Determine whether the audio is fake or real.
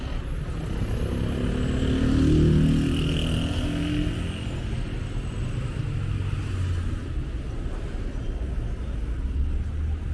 real